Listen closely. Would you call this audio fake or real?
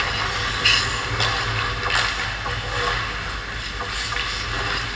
real